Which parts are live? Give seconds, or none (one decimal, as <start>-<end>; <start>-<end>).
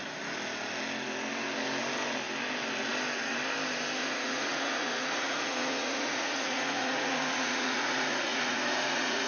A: 0.0-4.0